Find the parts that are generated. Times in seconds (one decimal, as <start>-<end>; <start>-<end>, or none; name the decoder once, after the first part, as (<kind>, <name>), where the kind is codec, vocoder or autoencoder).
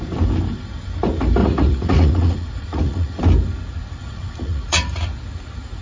1.4-3.2 (vocoder, Vocos); 4.0-5.1